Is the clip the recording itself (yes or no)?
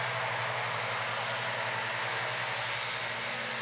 yes